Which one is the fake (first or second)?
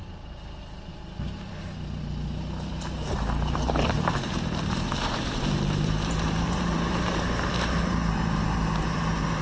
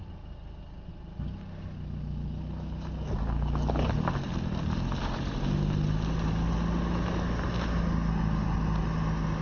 first